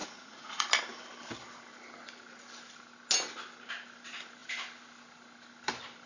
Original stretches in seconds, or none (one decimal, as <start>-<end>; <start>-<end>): 0.7-6.1